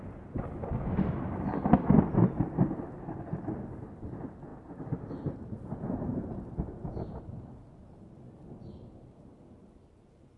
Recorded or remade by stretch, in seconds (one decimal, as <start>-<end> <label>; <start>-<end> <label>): 0.0-4.5 recorded; 4.5-5.1 remade; 5.1-10.4 recorded